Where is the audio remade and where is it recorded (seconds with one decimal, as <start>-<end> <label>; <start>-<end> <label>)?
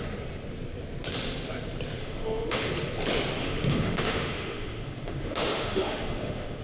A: 0.0-2.0 recorded; 2.0-2.7 remade; 2.7-3.4 recorded; 3.4-6.6 remade